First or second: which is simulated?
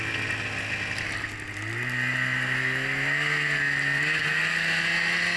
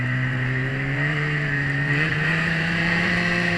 second